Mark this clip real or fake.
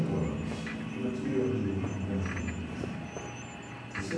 real